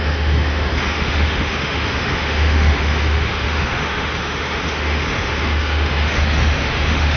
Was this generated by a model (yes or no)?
yes